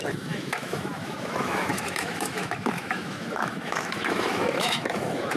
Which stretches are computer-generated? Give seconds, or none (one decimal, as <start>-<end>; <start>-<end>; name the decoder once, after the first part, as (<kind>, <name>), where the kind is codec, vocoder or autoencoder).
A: 0.0-5.4 (autoencoder, DAC-VAE)